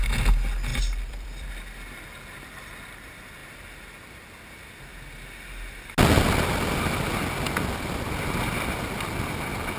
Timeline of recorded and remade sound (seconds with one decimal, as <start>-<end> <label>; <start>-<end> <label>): 0.0-0.7 recorded; 0.7-1.5 remade; 1.5-9.8 recorded